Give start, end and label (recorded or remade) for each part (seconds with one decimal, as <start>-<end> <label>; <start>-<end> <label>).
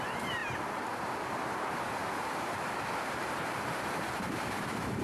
0.0-0.4 remade; 0.4-1.3 recorded; 1.3-5.0 remade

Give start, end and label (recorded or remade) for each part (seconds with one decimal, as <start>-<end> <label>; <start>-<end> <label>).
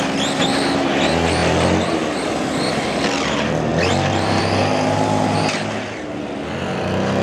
0.0-3.7 recorded; 3.7-4.4 remade; 4.4-7.2 recorded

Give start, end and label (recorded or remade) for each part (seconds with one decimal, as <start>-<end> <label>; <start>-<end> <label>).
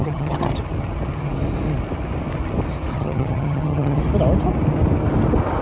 0.0-0.5 remade; 0.5-2.9 recorded; 2.9-4.0 remade; 4.0-5.6 recorded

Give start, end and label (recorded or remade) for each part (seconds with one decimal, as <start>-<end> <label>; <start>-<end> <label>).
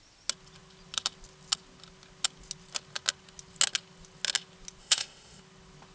0.0-4.8 recorded; 4.8-5.4 remade; 5.4-5.9 recorded